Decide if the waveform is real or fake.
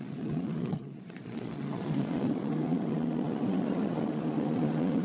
fake